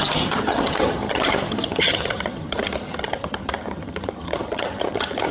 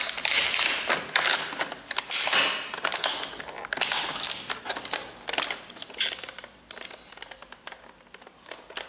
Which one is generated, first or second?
first